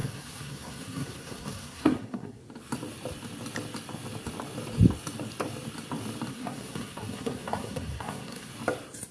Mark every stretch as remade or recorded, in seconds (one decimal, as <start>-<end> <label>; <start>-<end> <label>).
0.0-2.4 remade; 2.4-6.3 recorded; 6.3-8.5 remade; 8.5-9.1 recorded